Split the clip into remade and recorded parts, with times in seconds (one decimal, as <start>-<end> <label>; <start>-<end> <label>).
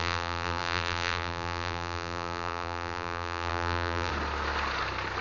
0.0-4.1 remade; 4.1-5.2 recorded